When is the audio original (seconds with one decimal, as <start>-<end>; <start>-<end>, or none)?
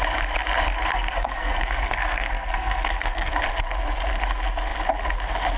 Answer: 0.0-0.9; 3.3-5.6